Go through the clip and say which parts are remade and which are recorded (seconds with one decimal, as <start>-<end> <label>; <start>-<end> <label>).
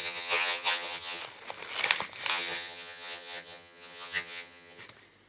0.0-1.2 remade; 1.2-2.3 recorded; 2.3-4.8 remade; 4.8-5.3 recorded